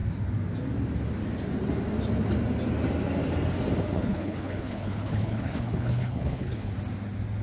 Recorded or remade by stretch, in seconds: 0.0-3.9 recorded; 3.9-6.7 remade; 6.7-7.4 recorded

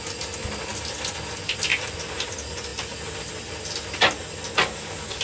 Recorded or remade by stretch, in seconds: 0.0-4.6 recorded; 4.6-5.2 remade

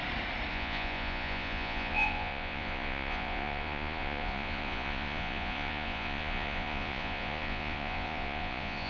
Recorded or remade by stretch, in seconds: 0.0-0.5 recorded; 0.5-8.9 remade

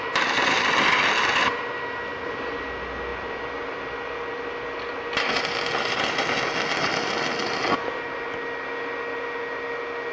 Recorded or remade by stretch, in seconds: 0.0-10.1 recorded

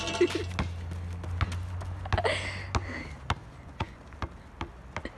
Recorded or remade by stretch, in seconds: 0.0-3.4 recorded; 3.4-4.0 remade; 4.0-5.2 recorded

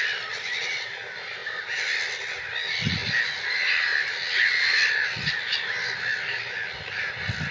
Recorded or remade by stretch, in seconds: 0.0-7.5 recorded

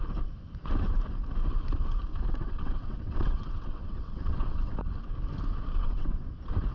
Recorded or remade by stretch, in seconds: 0.0-2.1 recorded; 2.1-4.8 remade; 4.8-5.8 recorded; 5.8-6.3 remade; 6.3-6.7 recorded